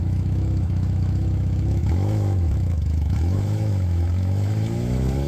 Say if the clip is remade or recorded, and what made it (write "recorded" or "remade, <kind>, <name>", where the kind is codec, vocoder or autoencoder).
remade, autoencoder, DAC-VAE